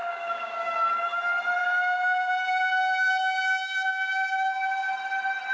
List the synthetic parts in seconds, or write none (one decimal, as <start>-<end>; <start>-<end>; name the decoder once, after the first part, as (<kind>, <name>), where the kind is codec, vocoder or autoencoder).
0.0-1.2 (codec, DAC); 1.6-4.9